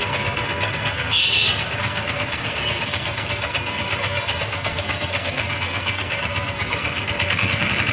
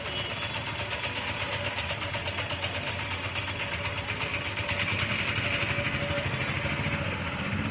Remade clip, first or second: first